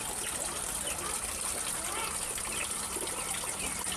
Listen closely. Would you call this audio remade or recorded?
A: recorded